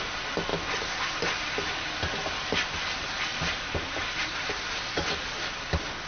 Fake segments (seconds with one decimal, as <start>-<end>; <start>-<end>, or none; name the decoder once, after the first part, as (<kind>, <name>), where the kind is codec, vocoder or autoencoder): none